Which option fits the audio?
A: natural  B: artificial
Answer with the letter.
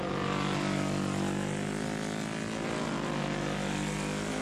A